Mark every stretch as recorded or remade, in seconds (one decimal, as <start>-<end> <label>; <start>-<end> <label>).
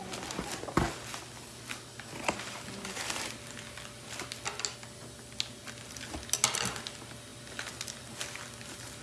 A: 0.0-9.0 recorded